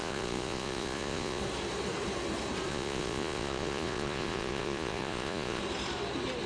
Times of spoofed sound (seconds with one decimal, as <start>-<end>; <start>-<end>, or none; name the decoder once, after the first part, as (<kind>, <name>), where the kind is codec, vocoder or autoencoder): 0.0-1.4 (vocoder, Vocos); 2.7-5.6